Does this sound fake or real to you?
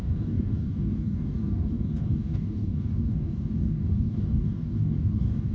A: fake